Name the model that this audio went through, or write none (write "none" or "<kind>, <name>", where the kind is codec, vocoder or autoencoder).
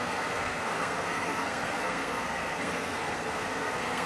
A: codec, SNAC